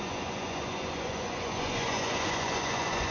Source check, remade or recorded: remade